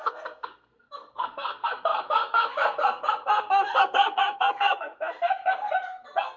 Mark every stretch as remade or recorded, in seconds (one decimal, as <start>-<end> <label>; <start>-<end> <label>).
0.0-6.4 remade